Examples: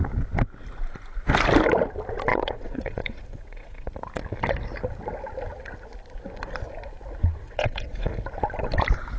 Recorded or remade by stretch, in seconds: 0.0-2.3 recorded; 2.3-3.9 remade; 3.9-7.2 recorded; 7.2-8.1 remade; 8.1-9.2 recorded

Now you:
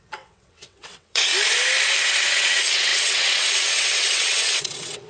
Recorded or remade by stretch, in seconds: 0.0-1.3 remade; 1.3-2.2 recorded; 2.2-5.1 remade